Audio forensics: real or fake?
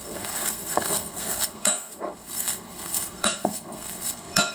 fake